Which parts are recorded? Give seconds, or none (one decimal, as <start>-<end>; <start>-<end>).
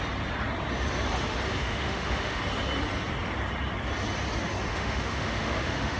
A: 0.0-1.6; 2.4-4.7